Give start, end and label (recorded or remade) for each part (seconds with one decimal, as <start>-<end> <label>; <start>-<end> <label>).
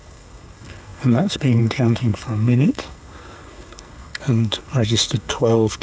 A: 0.0-5.8 remade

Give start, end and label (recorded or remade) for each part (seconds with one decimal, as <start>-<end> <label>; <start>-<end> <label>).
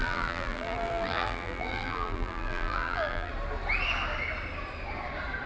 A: 0.0-3.3 remade; 3.3-5.5 recorded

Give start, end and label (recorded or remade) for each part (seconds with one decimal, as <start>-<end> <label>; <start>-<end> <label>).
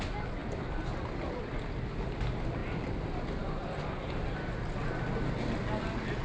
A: 0.0-6.2 recorded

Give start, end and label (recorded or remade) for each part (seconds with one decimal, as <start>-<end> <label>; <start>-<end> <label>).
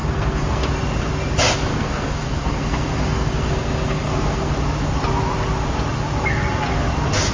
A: 0.0-0.7 remade; 0.7-1.7 recorded; 1.7-4.5 remade; 4.5-7.3 recorded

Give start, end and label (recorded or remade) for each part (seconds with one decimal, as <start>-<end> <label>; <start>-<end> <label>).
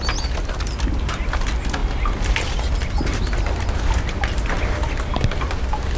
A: 0.0-6.0 recorded